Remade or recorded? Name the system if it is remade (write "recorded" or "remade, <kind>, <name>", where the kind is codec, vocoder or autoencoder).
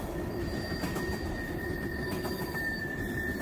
remade, vocoder, BigVGAN v2